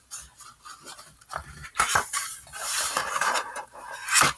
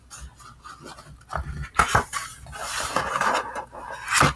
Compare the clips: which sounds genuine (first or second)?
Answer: second